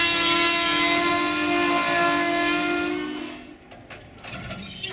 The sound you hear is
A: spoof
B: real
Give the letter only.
B